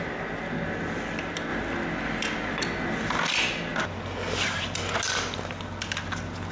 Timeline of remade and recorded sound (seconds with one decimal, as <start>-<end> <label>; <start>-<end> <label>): 0.0-6.5 recorded